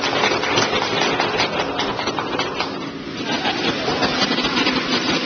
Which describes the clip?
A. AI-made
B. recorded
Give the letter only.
B